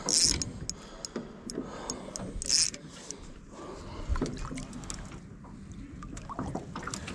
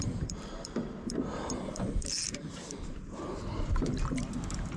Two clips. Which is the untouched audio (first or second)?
first